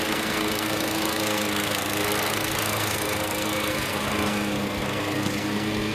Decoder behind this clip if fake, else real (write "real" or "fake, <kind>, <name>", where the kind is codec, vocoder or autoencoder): fake, codec, SNAC